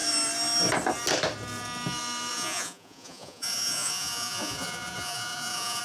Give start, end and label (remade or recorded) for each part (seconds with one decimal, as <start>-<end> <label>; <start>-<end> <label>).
0.0-2.3 recorded; 2.3-5.8 remade